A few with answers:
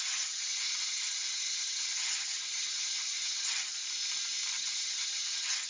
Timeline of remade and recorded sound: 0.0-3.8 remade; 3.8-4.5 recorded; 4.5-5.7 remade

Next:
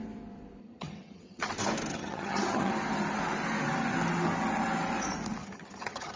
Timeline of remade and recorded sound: 0.0-0.6 recorded; 0.6-1.5 remade; 1.5-1.9 recorded; 1.9-2.7 remade; 2.7-5.4 recorded; 5.4-6.2 remade

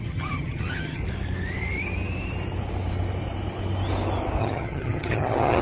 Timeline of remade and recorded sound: 0.0-1.0 remade; 1.0-4.4 recorded; 4.4-5.6 remade